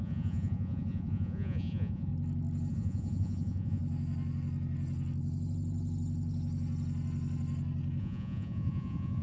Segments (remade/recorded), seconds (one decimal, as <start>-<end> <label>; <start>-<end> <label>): 0.0-2.1 remade; 2.1-2.7 recorded; 2.7-3.8 remade; 3.8-8.0 recorded; 8.0-9.2 remade